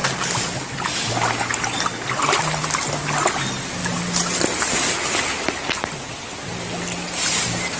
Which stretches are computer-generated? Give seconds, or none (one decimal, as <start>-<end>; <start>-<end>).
0.0-2.6; 3.8-4.9